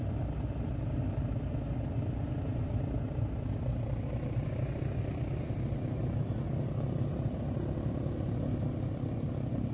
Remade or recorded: recorded